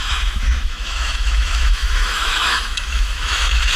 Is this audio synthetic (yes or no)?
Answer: yes